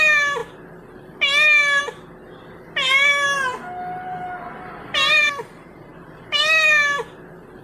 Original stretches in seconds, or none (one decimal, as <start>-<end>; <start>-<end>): 0.0-7.6